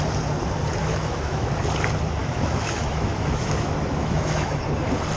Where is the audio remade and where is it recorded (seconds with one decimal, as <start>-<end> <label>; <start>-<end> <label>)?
0.0-0.8 recorded; 0.8-1.5 remade; 1.5-2.2 recorded; 2.2-4.6 remade; 4.6-5.2 recorded